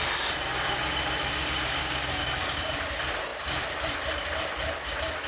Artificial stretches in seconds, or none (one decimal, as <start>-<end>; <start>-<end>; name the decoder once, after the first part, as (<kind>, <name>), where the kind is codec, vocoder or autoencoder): 1.8-2.7 (codec, DAC)